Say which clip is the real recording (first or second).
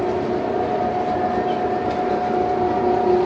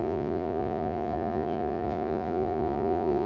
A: first